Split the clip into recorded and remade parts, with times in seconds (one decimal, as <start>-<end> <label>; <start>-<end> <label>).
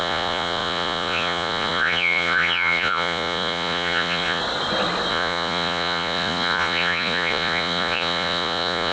0.0-4.4 remade; 4.4-5.1 recorded; 5.1-8.9 remade